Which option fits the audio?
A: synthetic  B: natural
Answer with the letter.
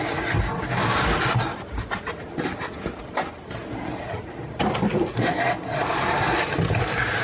B